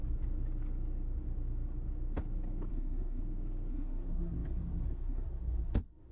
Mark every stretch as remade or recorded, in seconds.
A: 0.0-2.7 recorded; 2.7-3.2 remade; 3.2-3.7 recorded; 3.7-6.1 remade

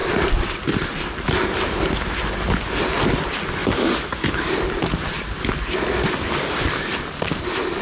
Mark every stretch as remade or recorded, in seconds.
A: 0.0-7.8 recorded

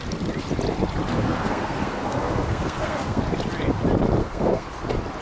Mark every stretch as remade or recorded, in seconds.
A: 0.0-1.1 recorded; 1.1-3.2 remade; 3.2-4.2 recorded; 4.2-4.7 remade; 4.7-5.2 recorded

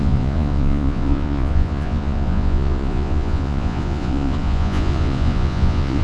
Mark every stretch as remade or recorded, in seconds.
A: 0.0-6.0 remade

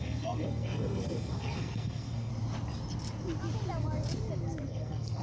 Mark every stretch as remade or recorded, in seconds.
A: 0.0-2.3 remade; 2.3-4.7 recorded; 4.7-5.2 remade